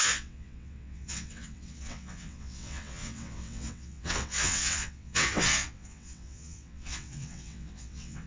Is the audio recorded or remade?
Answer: remade